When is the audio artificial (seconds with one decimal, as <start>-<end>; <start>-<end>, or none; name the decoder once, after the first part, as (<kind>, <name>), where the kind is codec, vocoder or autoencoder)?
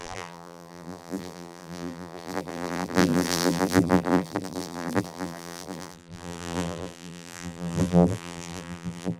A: 0.0-9.2 (vocoder, BigVGAN v2)